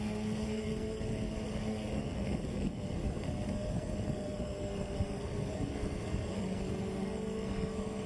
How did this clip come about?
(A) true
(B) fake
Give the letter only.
B